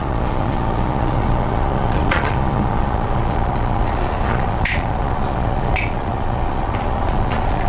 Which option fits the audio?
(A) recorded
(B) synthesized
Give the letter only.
B